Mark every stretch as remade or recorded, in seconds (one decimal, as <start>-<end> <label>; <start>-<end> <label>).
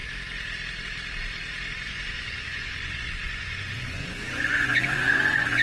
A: 0.0-1.7 recorded; 1.7-5.6 remade